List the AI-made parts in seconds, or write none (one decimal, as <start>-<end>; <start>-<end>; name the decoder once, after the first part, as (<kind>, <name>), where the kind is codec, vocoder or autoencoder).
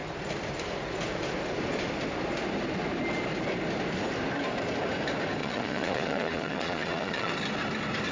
5.4-7.3 (vocoder, Vocos)